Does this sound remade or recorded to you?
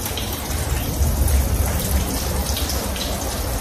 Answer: remade